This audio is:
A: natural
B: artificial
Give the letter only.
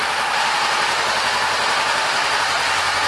A